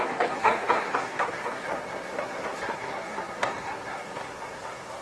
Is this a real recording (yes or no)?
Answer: no